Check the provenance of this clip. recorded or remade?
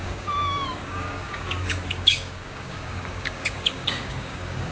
remade